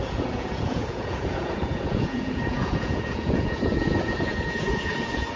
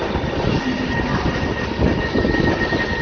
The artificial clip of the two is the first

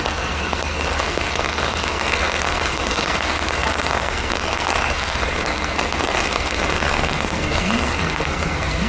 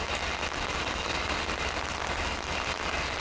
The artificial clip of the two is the first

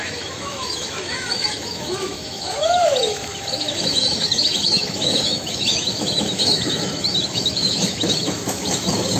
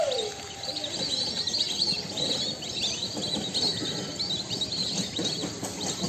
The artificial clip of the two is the first